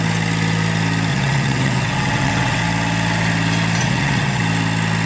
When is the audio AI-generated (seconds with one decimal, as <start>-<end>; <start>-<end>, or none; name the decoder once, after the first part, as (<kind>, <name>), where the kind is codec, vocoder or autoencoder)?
1.1-2.6 (vocoder, WaveNeXt); 3.8-4.4